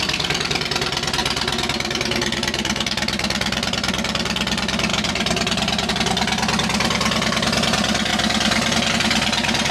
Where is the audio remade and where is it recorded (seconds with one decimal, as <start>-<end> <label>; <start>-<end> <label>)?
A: 0.0-1.2 recorded; 1.2-3.9 remade; 3.9-4.9 recorded; 4.9-5.9 remade; 5.9-9.7 recorded